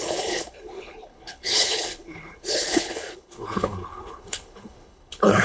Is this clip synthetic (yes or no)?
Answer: yes